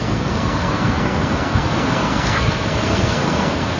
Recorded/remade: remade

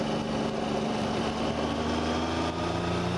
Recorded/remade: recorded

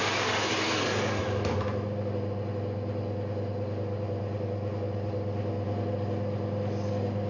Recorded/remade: recorded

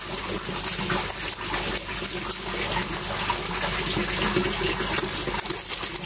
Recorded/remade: recorded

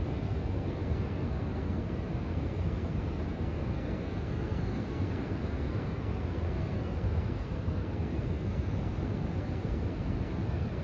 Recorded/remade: remade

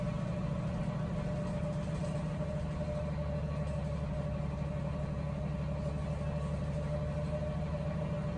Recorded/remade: recorded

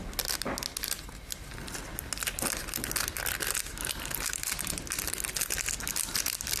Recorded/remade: recorded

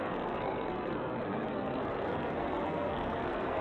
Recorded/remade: remade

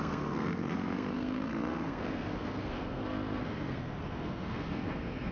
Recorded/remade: remade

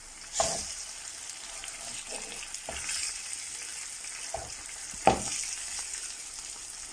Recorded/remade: recorded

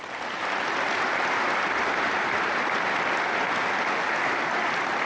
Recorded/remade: recorded